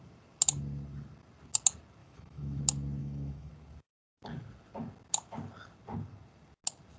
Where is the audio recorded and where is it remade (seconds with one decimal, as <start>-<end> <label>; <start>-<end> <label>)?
0.0-2.0 recorded; 2.0-2.6 remade; 2.6-3.0 recorded; 3.0-3.5 remade; 3.5-7.0 recorded